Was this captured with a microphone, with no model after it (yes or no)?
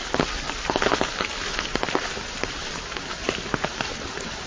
yes